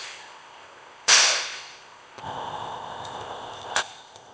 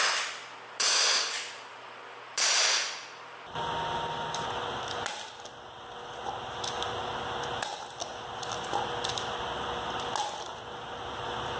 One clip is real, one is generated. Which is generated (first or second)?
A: first